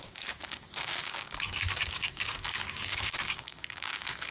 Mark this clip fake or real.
fake